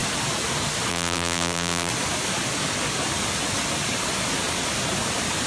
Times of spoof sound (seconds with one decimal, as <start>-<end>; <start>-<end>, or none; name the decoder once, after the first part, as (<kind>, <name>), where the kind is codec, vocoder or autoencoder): 0.9-1.9 (vocoder, BigVGAN v2)